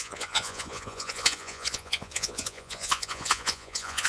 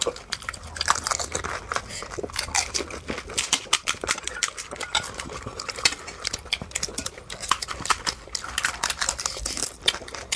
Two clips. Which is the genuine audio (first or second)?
second